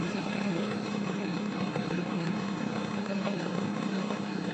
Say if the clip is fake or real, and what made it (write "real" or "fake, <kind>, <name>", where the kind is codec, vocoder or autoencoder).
fake, codec, SNAC